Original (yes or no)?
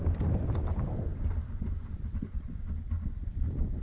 yes